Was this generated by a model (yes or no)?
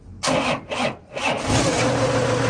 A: no